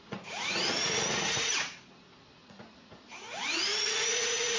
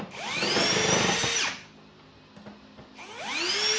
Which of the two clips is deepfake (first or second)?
first